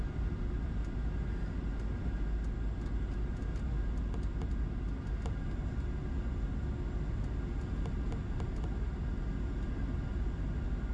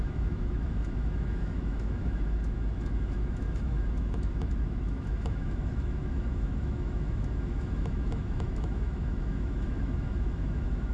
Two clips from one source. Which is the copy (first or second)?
second